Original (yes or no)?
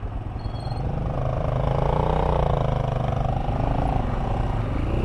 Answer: yes